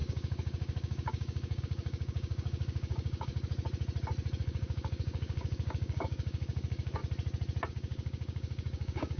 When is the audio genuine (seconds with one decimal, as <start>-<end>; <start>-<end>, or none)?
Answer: 3.3-4.4; 7.0-7.7